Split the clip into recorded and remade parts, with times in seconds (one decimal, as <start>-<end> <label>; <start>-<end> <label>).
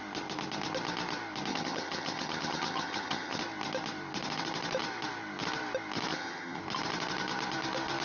0.0-1.5 recorded; 1.5-3.4 remade; 3.4-6.1 recorded; 6.1-6.6 remade; 6.6-8.0 recorded